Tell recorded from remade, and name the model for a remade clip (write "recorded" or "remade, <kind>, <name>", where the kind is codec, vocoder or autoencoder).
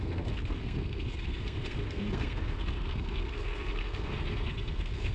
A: remade, codec, SNAC